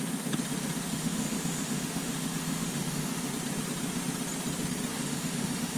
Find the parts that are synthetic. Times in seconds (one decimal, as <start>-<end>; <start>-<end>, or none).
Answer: 0.9-3.3; 4.9-5.8